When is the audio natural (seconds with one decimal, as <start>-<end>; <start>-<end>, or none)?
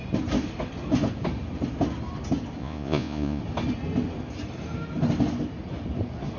0.0-2.6; 3.4-6.4